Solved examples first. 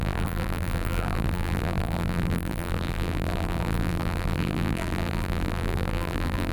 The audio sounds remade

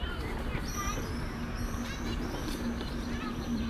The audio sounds remade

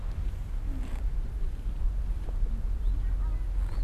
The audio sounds recorded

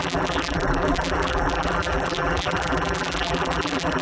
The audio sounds remade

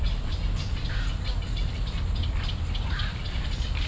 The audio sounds recorded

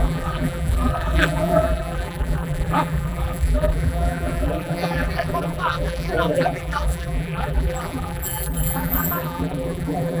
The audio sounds remade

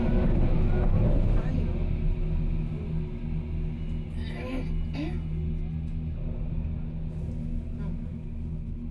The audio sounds recorded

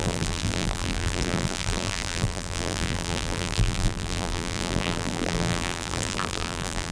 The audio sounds remade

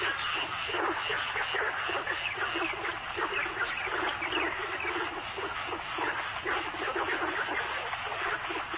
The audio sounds recorded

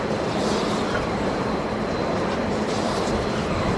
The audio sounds remade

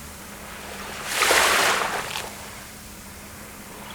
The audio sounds remade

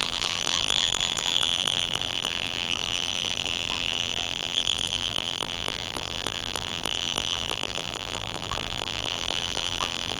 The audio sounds remade